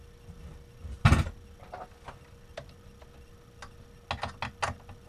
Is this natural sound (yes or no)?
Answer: yes